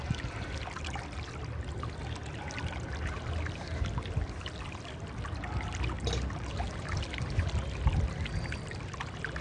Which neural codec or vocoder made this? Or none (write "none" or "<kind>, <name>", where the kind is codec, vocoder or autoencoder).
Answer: none